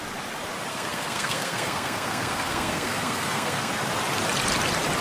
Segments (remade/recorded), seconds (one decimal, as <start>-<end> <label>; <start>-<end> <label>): 0.0-0.7 recorded; 0.7-3.7 remade; 3.7-5.0 recorded